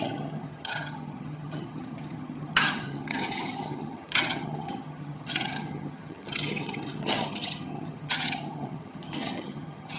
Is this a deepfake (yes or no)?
yes